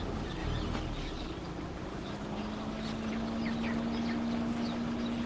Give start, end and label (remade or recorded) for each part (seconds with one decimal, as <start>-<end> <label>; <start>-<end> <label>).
0.0-5.3 recorded